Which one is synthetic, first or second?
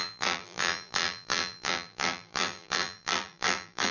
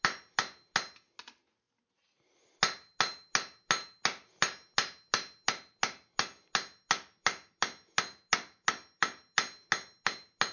first